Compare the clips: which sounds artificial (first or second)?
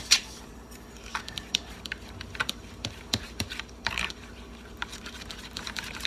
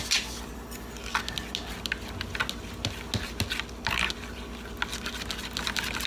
first